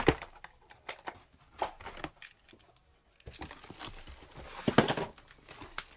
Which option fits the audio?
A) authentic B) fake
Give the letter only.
A